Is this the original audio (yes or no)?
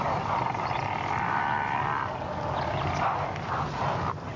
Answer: yes